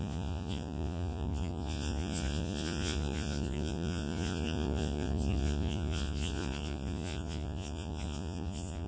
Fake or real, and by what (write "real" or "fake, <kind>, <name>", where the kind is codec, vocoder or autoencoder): fake, vocoder, Vocos